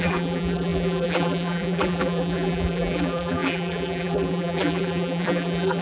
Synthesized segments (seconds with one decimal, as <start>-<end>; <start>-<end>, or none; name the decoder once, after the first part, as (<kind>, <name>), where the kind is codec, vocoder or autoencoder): 0.0-5.8 (vocoder, BigVGAN v2)